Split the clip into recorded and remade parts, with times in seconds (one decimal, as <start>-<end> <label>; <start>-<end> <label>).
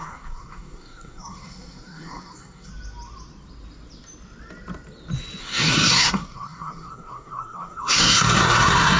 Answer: 0.0-2.7 remade; 2.7-5.4 recorded; 5.4-9.0 remade